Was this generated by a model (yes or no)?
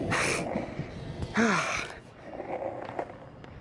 no